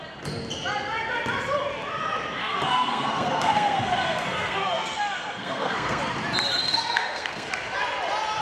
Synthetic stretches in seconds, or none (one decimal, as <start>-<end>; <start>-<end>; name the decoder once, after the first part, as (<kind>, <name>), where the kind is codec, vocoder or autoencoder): 2.4-6.0 (codec, SNAC); 6.6-7.5